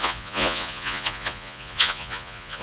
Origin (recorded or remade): remade